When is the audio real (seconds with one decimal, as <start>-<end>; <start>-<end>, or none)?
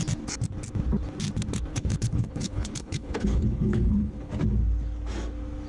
0.0-1.7; 4.3-5.7